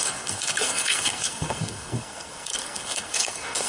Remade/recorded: remade